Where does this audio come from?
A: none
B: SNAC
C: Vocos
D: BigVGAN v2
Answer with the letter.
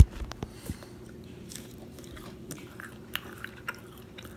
D